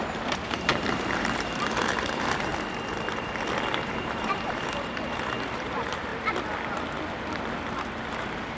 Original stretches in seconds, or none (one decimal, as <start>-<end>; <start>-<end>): 2.5-3.8; 6.1-8.2